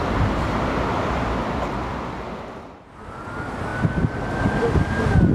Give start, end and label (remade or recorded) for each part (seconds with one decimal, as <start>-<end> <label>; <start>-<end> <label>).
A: 0.0-1.9 remade; 1.9-3.0 recorded; 3.0-3.7 remade; 3.7-4.4 recorded; 4.4-5.3 remade

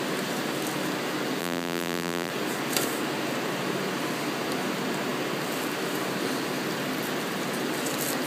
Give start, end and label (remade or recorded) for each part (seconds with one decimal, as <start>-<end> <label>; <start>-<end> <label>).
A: 0.0-1.4 recorded; 1.4-2.3 remade; 2.3-8.3 recorded